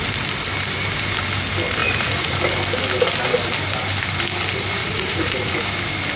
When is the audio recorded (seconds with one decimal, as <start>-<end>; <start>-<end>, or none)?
0.0-1.8; 2.4-4.8; 5.6-6.2